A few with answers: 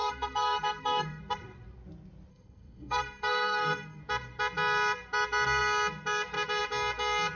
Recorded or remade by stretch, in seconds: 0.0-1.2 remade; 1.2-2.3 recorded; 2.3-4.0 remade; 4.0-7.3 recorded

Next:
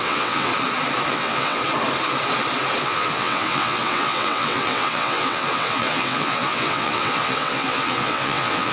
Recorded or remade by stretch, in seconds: 0.0-0.5 remade; 0.5-1.1 recorded; 1.1-1.6 remade; 1.6-2.8 recorded; 2.8-8.7 remade

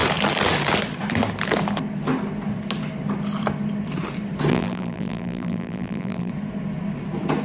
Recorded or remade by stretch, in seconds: 0.0-4.5 recorded; 4.5-6.3 remade; 6.3-7.4 recorded

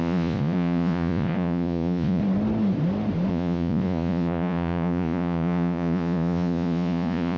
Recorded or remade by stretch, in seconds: 0.0-2.2 remade; 2.2-3.3 recorded; 3.3-7.4 remade

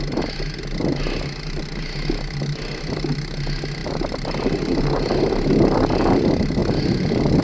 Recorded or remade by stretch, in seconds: 0.0-3.8 recorded; 3.8-4.8 remade; 4.8-7.4 recorded

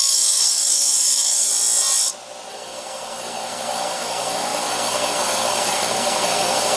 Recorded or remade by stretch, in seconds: 0.0-1.5 remade; 1.5-2.5 recorded; 2.5-6.8 remade

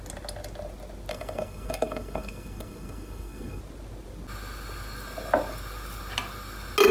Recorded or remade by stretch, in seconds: 0.0-1.1 recorded; 1.1-3.6 remade; 3.6-6.9 recorded